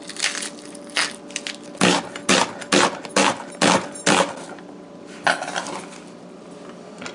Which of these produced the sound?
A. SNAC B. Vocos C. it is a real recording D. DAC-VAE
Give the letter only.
C